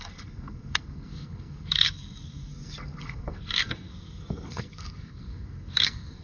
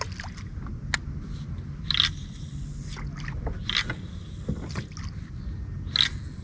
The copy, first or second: first